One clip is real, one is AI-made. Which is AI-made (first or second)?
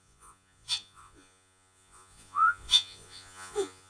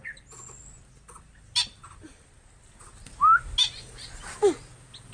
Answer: first